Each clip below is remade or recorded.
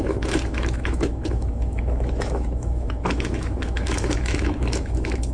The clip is remade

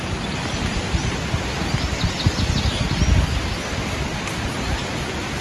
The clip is recorded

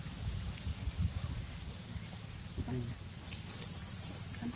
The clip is recorded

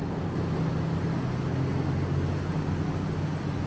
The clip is recorded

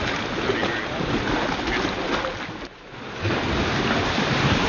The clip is recorded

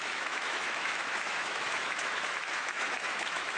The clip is remade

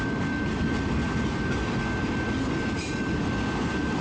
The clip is recorded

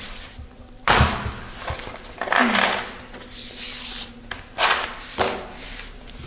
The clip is recorded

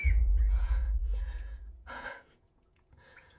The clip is remade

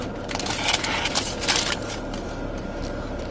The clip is recorded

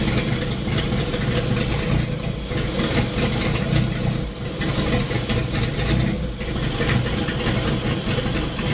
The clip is recorded